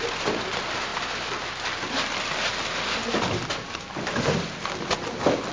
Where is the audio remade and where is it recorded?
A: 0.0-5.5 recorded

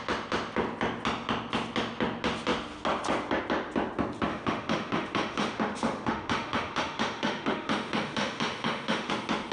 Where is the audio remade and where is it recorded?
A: 0.0-4.3 recorded; 4.3-9.1 remade; 9.1-9.5 recorded

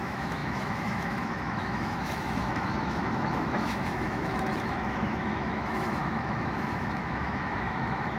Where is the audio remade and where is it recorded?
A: 0.0-8.2 remade

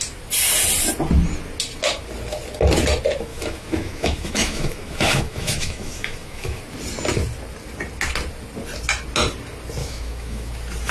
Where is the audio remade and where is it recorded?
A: 0.0-3.3 recorded; 3.3-6.6 remade; 6.6-9.8 recorded; 9.8-10.5 remade; 10.5-10.9 recorded

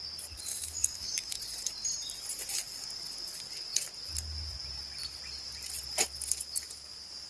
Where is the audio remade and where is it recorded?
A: 0.0-0.5 recorded; 0.5-1.4 remade; 1.4-7.3 recorded

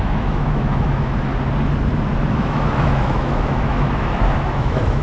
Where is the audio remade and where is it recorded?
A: 0.0-1.3 remade; 1.3-2.3 recorded; 2.3-5.0 remade